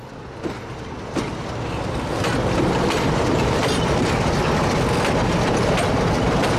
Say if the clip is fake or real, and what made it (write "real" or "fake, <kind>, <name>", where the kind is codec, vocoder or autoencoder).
real